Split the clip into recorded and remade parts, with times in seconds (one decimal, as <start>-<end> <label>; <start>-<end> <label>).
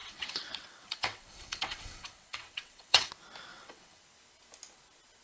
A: 0.0-3.1 remade; 3.1-3.5 recorded; 3.5-4.0 remade; 4.0-5.2 recorded